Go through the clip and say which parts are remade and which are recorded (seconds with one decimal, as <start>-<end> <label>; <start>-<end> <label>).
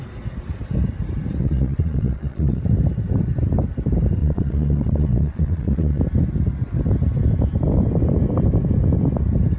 0.0-1.4 recorded; 1.4-2.6 remade; 2.6-4.2 recorded; 4.2-6.0 remade; 6.0-9.6 recorded